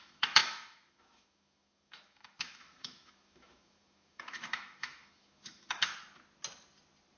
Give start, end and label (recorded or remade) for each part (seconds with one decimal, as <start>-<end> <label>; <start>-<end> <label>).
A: 0.0-6.0 remade; 6.0-7.2 recorded